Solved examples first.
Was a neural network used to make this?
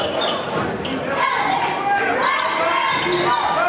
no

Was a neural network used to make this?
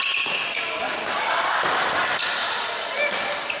no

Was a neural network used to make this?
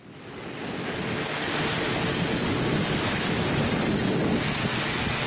no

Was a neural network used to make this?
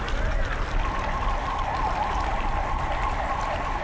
no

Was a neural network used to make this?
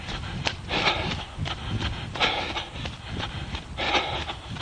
no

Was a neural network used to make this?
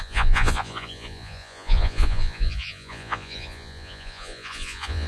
yes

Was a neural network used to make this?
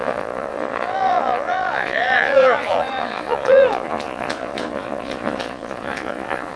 yes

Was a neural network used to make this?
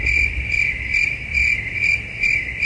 no